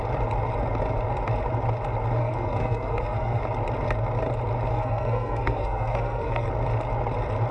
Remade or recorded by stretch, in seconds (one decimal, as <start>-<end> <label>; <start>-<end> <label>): 0.0-2.2 recorded; 2.2-3.4 remade; 3.4-4.7 recorded; 4.7-6.5 remade; 6.5-7.5 recorded